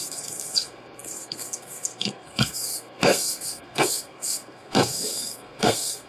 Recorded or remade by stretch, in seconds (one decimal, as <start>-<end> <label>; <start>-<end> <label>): 0.0-6.1 remade